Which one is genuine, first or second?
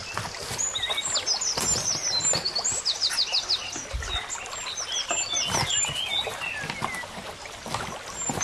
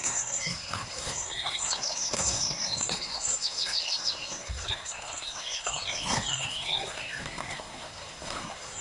first